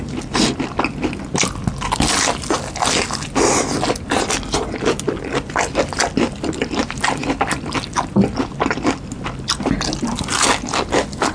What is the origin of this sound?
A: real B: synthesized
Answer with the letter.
A